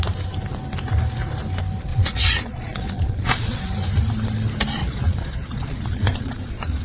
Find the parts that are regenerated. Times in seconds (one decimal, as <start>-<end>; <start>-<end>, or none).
1.9-3.6; 4.8-6.8